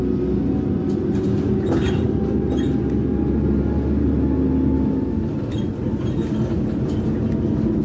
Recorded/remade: recorded